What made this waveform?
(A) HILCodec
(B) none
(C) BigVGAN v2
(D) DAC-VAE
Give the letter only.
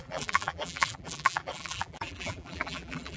C